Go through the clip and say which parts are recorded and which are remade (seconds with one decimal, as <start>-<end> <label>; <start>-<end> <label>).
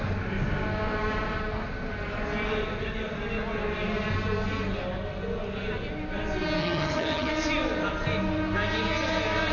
0.0-6.6 recorded; 6.6-7.3 remade; 7.3-9.5 recorded